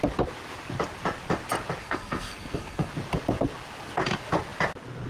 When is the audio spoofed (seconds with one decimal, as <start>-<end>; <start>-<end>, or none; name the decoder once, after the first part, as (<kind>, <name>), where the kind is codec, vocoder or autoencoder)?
1.8-2.9 (codec, SNAC)